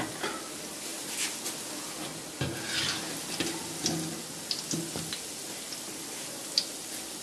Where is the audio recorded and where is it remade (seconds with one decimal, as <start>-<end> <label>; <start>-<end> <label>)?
0.0-7.2 recorded